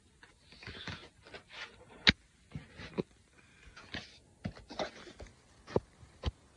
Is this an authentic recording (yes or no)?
yes